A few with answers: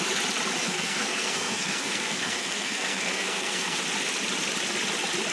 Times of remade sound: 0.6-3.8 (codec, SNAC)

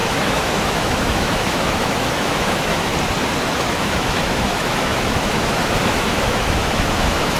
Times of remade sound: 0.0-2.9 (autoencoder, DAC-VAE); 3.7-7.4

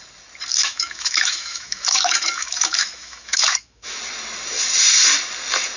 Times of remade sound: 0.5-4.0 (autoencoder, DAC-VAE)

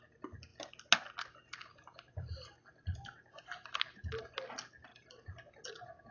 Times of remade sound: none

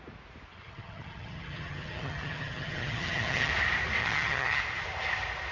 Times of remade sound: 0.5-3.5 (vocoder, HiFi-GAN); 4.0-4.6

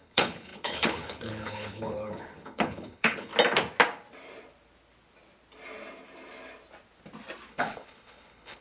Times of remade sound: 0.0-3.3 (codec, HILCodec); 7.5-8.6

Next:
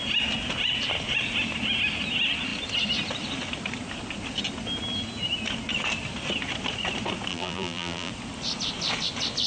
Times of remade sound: 7.3-8.1 (vocoder, BigVGAN v2)